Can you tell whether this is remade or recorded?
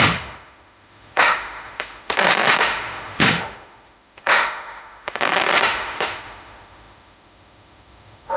remade